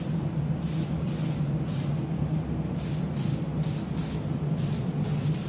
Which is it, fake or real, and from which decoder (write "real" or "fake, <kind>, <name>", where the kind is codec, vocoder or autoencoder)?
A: real